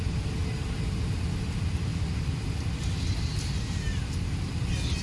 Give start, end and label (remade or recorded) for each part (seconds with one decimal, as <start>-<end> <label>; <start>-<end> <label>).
0.0-5.0 recorded